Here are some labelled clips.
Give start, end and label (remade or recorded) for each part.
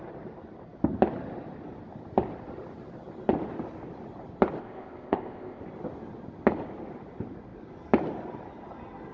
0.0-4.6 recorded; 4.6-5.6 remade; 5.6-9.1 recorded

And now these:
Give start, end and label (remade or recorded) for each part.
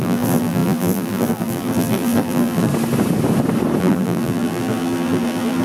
0.0-2.7 remade; 2.7-3.8 recorded; 3.8-5.6 remade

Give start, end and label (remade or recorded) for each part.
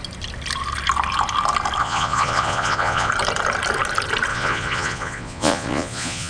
0.0-1.8 recorded; 1.8-3.1 remade; 3.1-4.3 recorded; 4.3-6.3 remade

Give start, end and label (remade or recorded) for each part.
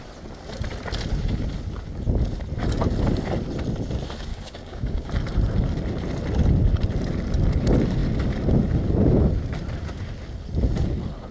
0.0-4.3 recorded; 4.3-5.1 remade; 5.1-11.3 recorded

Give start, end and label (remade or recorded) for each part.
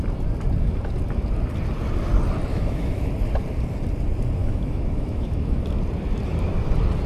0.0-2.5 recorded; 2.5-3.1 remade; 3.1-4.4 recorded; 4.4-5.6 remade; 5.6-7.1 recorded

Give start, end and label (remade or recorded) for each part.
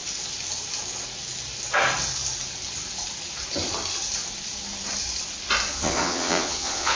0.0-5.7 recorded; 5.7-7.0 remade